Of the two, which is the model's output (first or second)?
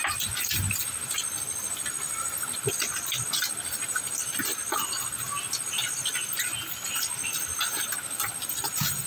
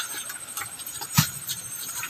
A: second